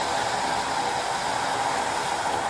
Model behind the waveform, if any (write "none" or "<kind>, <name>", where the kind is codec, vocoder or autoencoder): none